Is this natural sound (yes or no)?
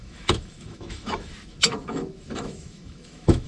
no